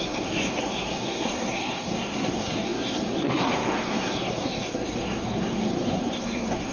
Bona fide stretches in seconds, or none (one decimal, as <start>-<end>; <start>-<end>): none